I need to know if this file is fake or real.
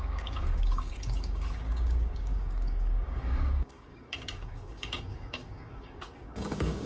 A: fake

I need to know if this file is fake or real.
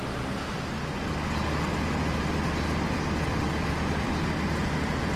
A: real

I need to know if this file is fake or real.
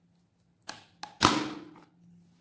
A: real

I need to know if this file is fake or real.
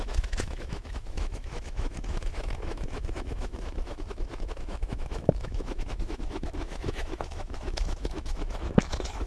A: fake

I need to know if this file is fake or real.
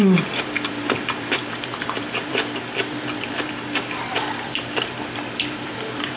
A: fake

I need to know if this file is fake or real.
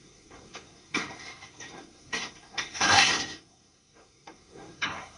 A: fake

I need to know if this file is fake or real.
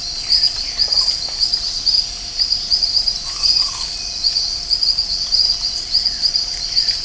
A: real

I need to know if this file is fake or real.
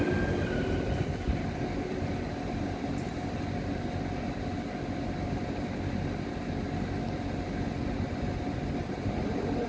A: real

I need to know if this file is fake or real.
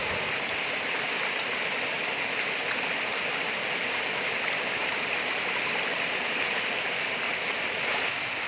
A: real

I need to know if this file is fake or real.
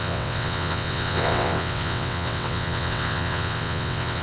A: fake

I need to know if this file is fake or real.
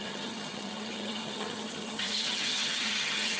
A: fake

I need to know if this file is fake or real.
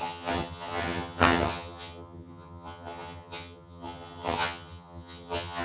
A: fake